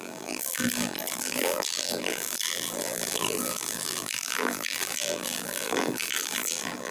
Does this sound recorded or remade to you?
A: remade